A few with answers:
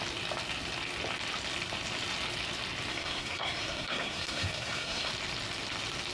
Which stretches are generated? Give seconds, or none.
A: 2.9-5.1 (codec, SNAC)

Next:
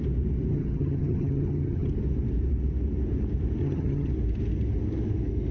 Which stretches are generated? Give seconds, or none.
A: 0.5-1.9 (vocoder, HiFi-GAN); 3.6-4.1

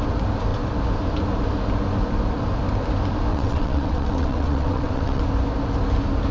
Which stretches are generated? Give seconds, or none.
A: 3.3-5.2 (vocoder, WaveNeXt)

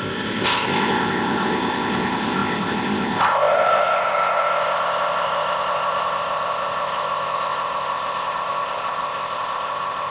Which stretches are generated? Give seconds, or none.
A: 0.0-10.1 (codec, ZipCodec)